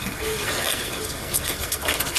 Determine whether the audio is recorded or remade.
remade